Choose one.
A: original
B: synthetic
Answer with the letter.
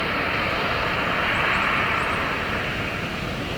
B